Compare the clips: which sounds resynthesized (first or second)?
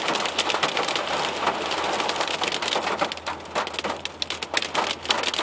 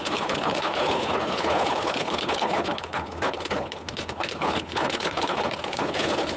second